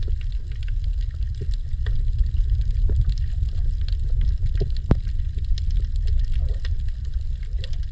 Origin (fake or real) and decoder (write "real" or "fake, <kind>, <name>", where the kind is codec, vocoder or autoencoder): real